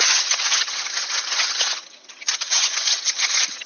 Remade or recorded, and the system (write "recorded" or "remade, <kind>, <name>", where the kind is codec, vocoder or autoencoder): remade, vocoder, HiFi-GAN